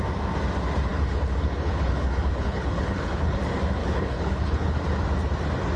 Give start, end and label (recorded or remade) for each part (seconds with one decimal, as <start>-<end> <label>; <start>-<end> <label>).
0.0-0.9 recorded; 0.9-3.4 remade; 3.4-3.8 recorded; 3.8-4.8 remade; 4.8-5.8 recorded